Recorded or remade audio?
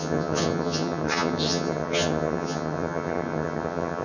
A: remade